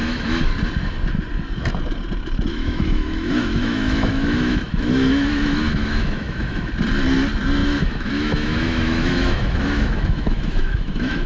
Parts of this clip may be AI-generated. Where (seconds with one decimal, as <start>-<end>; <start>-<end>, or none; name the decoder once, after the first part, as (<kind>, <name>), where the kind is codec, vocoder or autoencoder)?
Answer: 0.0-0.5 (autoencoder, DAC-VAE); 2.5-6.7; 7.6-11.3